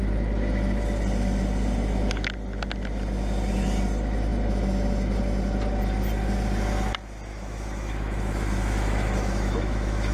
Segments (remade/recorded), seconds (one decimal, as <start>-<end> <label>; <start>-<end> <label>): 0.0-7.3 recorded; 7.3-10.1 remade